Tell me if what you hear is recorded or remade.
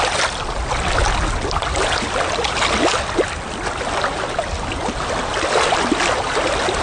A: recorded